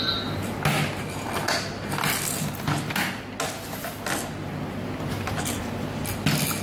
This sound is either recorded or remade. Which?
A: recorded